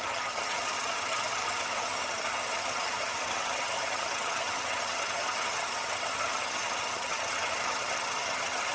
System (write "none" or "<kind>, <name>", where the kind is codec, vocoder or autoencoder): vocoder, HiFi-GAN